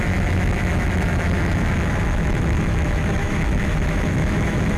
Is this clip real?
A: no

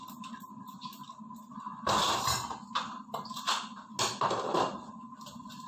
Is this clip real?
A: yes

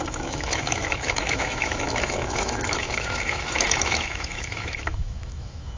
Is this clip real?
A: no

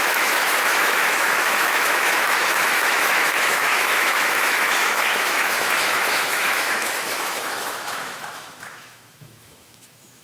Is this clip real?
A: no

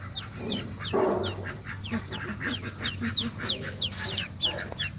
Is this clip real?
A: yes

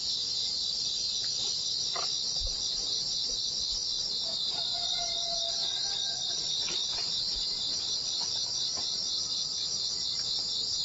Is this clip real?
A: yes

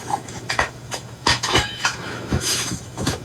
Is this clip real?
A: no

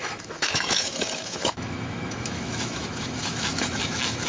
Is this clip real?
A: no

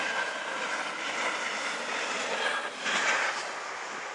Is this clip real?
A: yes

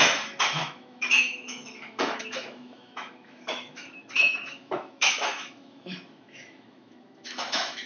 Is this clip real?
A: no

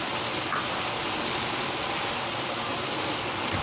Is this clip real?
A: yes